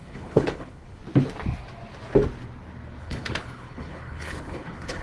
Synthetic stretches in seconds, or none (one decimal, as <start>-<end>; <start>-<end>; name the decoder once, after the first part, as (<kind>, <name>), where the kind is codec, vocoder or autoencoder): 0.0-1.0 (codec, HILCodec); 3.0-5.0